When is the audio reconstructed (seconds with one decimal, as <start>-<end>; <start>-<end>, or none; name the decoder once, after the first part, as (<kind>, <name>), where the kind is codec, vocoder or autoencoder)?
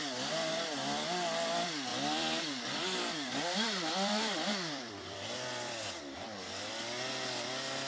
1.9-6.0 (vocoder, BigVGAN v2)